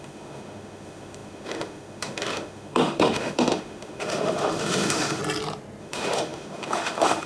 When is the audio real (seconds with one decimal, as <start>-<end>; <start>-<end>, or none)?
5.2-5.8

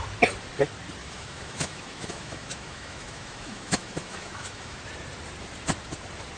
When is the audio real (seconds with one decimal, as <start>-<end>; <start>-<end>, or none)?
0.0-1.0; 4.8-6.4

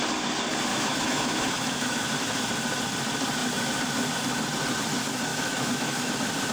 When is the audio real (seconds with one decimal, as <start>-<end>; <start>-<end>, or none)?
0.0-0.7; 2.1-5.3; 6.1-6.5

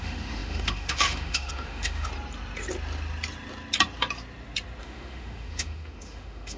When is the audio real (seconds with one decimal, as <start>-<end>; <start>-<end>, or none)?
2.1-4.8

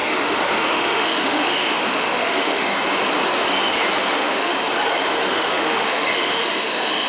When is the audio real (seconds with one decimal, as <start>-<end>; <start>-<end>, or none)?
2.7-4.1; 4.5-5.3

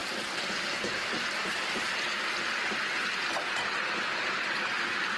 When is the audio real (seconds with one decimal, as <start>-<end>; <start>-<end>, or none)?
0.0-5.2